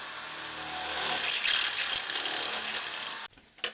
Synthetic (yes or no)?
no